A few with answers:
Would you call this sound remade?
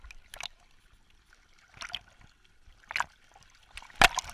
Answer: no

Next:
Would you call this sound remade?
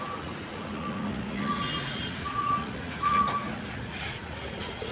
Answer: yes